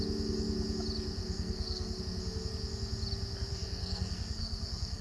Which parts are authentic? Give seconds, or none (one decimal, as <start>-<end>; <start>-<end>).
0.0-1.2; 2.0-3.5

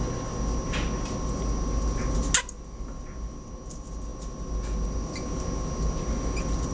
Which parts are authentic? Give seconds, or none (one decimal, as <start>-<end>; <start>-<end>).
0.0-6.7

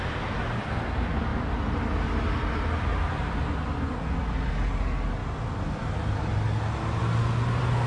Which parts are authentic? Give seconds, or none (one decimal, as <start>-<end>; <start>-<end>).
0.0-7.9

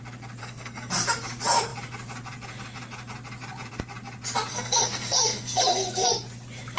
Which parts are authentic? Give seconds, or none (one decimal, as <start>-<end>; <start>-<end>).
0.0-0.4; 0.9-4.5; 6.1-6.8

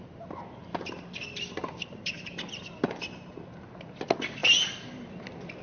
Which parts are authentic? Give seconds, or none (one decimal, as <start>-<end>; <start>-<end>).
0.0-5.6

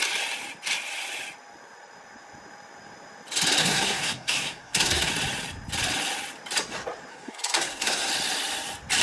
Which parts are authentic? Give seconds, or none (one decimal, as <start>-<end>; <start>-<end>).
0.0-3.6; 5.1-7.1; 8.1-9.0